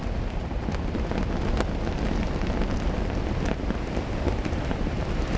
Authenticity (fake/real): real